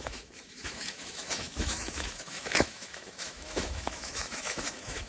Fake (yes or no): yes